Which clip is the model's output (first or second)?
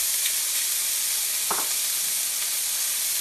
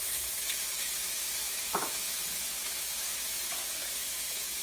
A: second